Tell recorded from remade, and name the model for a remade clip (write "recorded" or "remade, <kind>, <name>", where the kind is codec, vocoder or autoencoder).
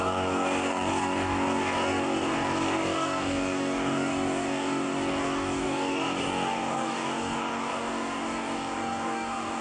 remade, codec, DAC